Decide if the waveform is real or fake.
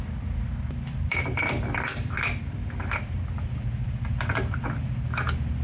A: fake